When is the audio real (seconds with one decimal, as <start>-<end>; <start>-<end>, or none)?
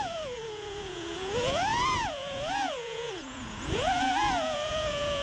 none